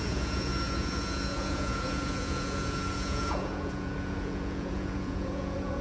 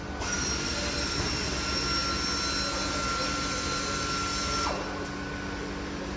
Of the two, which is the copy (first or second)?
first